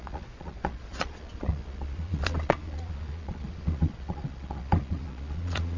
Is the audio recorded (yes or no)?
no